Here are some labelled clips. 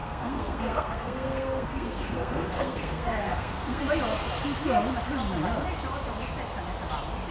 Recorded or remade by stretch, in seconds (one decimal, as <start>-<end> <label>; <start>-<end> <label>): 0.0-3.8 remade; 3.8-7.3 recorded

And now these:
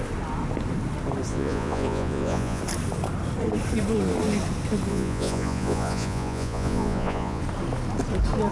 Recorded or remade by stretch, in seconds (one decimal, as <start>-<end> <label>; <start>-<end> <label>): 0.0-1.3 recorded; 1.3-2.6 remade; 2.6-4.9 recorded; 4.9-7.4 remade; 7.4-8.5 recorded

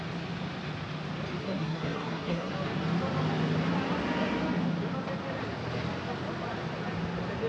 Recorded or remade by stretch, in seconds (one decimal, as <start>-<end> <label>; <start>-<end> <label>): 0.0-1.4 recorded; 1.4-2.5 remade; 2.5-7.5 recorded